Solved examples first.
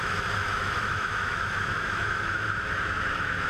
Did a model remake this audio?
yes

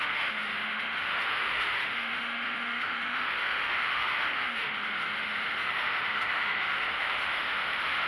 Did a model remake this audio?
yes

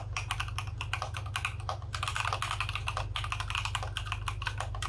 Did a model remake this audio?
no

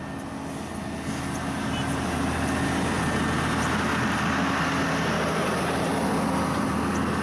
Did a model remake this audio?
no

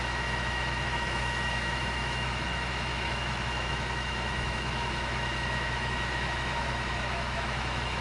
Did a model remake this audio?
yes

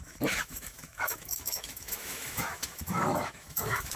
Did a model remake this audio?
yes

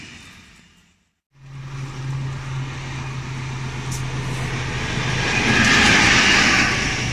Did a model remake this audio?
no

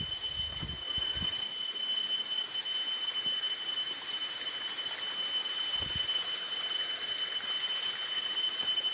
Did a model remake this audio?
no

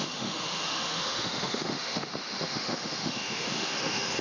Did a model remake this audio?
yes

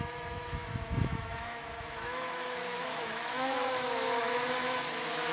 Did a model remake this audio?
yes